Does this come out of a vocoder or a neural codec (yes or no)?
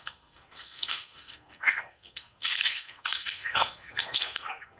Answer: yes